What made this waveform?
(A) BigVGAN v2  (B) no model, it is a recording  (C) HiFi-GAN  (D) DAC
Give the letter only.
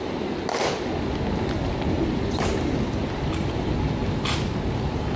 B